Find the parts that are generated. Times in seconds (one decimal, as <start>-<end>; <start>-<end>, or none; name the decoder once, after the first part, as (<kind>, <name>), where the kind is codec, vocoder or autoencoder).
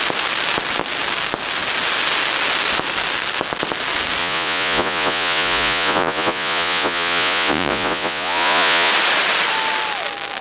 4.2-8.9 (vocoder, Vocos)